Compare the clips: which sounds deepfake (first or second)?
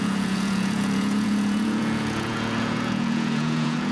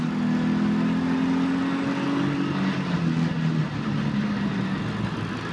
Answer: first